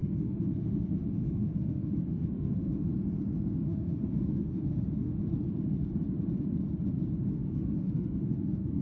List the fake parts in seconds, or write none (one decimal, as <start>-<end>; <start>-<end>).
0.0-2.9; 3.6-5.2; 7.3-8.8